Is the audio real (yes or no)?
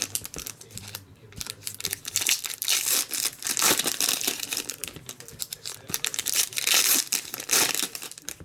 no